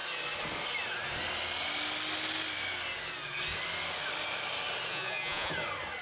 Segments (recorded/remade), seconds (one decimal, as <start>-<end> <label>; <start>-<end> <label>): 0.0-4.9 recorded; 4.9-5.5 remade; 5.5-6.0 recorded